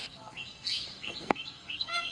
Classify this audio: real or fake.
fake